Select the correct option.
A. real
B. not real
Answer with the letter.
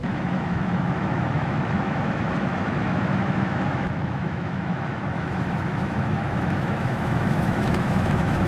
B